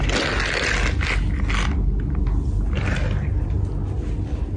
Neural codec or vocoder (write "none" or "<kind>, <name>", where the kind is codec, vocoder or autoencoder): none